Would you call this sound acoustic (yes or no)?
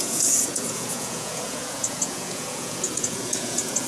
no